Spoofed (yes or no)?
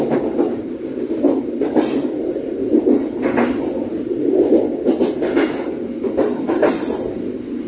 no